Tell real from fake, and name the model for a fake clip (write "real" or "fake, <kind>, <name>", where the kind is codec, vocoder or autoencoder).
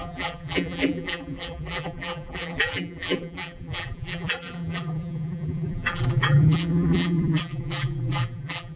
fake, vocoder, BigVGAN v2